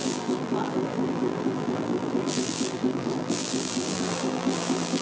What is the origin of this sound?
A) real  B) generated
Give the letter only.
B